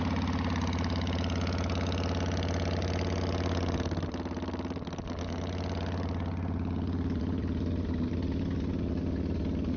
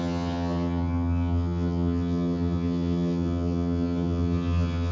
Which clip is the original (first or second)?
first